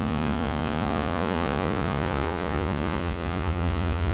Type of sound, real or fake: fake